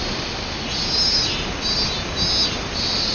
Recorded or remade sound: recorded